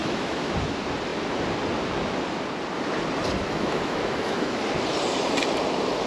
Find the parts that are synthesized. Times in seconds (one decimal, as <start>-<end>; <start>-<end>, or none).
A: 0.0-0.5; 3.4-4.6